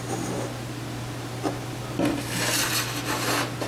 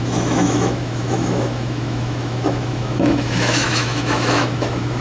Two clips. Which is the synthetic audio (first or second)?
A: second